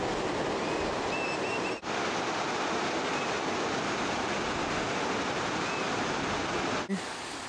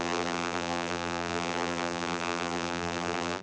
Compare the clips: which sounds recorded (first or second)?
first